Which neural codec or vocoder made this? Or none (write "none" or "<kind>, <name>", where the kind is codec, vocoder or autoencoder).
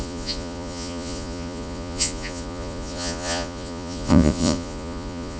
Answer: vocoder, Vocos